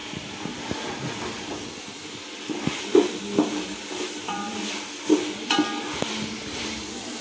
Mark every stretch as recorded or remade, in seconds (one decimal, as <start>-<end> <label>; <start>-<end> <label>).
0.0-7.2 recorded